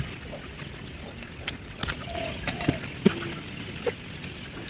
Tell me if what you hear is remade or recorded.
recorded